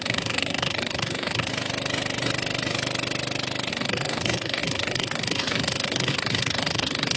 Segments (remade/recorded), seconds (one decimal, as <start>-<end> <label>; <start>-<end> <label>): 0.0-1.5 remade; 1.5-3.7 recorded; 3.7-7.2 remade